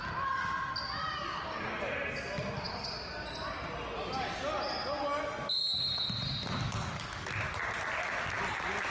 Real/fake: real